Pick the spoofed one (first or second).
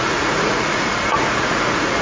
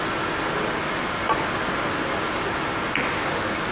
first